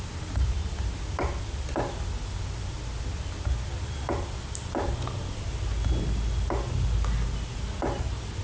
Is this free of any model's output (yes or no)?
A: yes